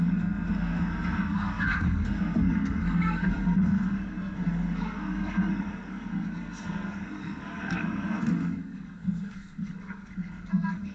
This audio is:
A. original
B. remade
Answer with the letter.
B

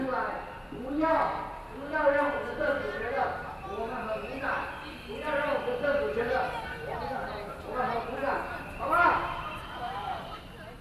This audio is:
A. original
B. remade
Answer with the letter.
A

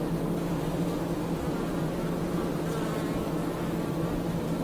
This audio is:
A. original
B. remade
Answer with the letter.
A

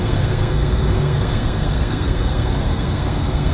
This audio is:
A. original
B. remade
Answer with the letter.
B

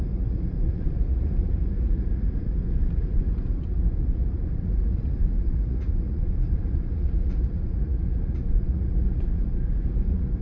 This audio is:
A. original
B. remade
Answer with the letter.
B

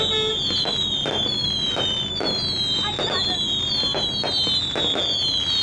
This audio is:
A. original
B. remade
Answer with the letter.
A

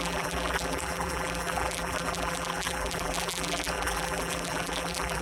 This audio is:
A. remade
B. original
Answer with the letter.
A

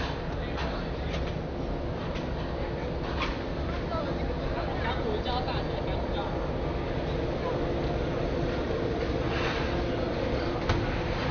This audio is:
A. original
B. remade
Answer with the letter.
A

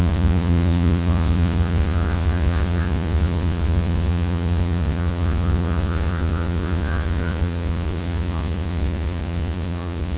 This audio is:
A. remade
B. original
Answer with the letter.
A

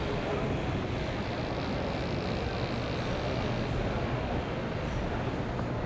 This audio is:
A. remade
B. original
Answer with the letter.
B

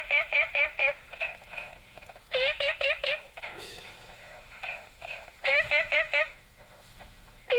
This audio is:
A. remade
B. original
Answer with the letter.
A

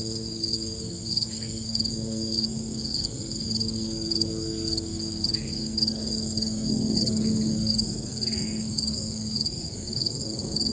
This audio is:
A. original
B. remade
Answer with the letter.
B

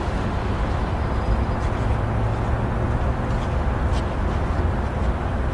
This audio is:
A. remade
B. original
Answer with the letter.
B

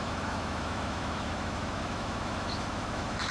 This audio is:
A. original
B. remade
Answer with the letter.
B